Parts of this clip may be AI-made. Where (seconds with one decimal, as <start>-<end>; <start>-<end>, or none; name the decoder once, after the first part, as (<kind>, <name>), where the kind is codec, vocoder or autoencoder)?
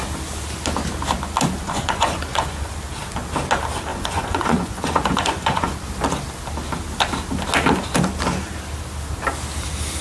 1.6-2.7 (vocoder, Vocos); 3.9-5.7